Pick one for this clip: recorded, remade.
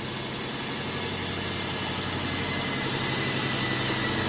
recorded